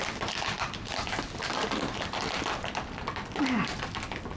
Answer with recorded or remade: recorded